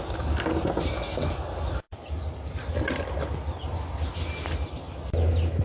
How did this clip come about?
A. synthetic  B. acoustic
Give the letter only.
B